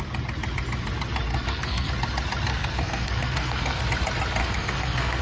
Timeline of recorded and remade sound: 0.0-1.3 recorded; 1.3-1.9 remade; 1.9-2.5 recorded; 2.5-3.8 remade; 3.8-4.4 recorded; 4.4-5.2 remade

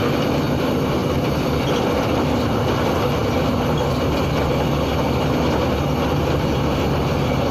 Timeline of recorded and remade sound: 0.0-1.0 recorded; 1.0-2.2 remade; 2.2-7.5 recorded

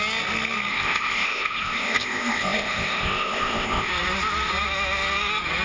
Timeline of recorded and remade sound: 0.0-0.7 recorded; 0.7-3.9 remade; 3.9-5.6 recorded

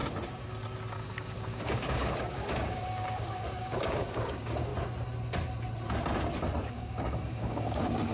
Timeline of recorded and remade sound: 0.0-0.9 recorded; 0.9-4.7 remade; 4.7-6.7 recorded; 6.7-8.1 remade

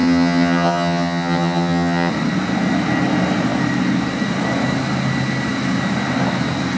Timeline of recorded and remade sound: 0.0-2.1 remade; 2.1-6.8 recorded

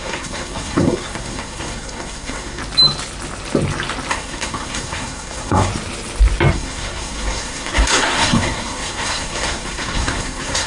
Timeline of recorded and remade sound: 0.0-2.6 remade; 2.6-4.1 recorded; 4.1-5.7 remade; 5.7-6.5 recorded; 6.5-10.7 remade